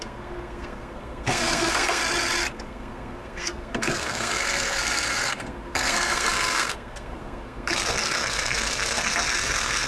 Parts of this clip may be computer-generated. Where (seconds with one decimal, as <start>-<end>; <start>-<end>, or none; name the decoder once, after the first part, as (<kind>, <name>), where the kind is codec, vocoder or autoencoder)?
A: 0.0-2.0 (codec, SNAC); 2.5-9.9